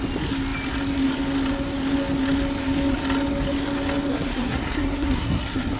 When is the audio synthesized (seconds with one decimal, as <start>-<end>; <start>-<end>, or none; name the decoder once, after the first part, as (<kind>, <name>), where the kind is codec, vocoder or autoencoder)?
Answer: 4.1-5.8 (codec, SNAC)